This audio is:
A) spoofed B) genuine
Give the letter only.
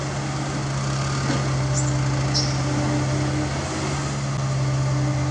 B